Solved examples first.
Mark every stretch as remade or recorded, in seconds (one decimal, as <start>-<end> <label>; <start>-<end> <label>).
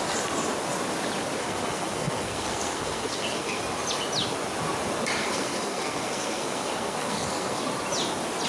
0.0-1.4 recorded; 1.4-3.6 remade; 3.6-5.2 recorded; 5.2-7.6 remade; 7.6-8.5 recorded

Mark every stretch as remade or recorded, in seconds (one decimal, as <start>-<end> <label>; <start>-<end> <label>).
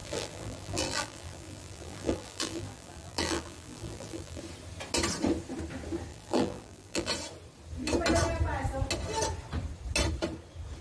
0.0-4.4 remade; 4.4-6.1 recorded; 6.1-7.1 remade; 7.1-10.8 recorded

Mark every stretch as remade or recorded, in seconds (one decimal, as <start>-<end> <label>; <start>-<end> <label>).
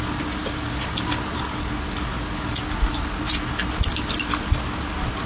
0.0-5.3 recorded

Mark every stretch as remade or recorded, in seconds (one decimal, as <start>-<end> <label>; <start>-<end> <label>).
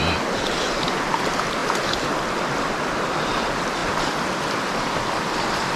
0.0-5.8 recorded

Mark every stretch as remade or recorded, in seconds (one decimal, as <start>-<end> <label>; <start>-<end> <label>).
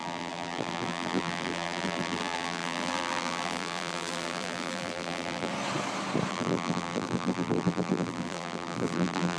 0.0-5.5 remade; 5.5-6.3 recorded; 6.3-9.4 remade